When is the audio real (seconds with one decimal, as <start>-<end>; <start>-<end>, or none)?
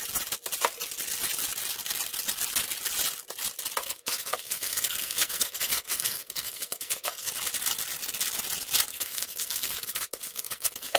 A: 0.0-3.8; 7.3-8.9